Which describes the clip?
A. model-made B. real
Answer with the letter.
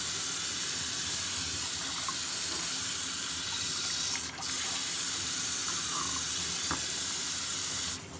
B